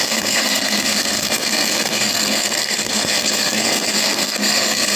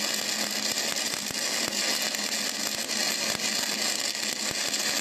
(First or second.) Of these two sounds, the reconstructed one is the first